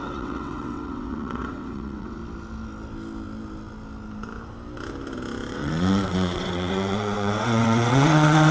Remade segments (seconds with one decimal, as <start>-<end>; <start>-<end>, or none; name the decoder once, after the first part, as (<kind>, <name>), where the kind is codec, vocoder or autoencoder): 0.0-2.2 (vocoder, WaveNeXt); 5.5-8.5